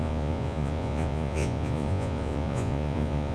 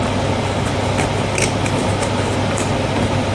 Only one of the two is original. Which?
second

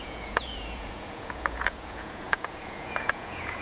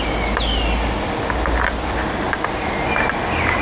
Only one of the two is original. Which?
second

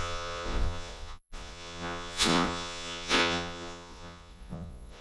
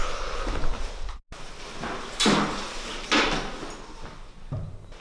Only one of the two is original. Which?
second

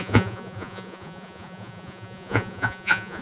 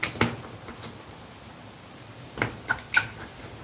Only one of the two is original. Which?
second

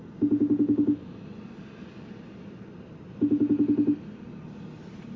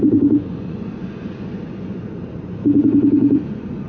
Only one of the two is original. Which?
first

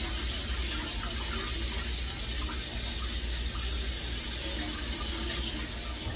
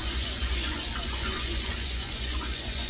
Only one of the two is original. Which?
first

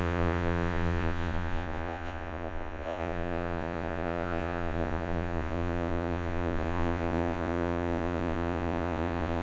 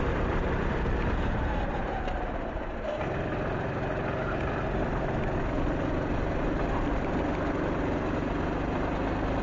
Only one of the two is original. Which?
second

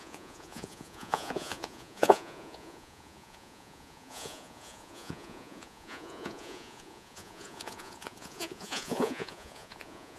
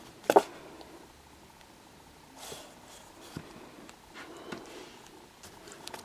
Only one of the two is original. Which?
second